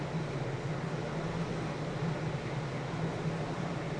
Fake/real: real